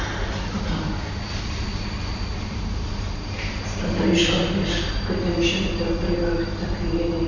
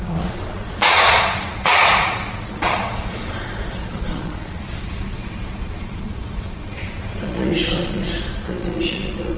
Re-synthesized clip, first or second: second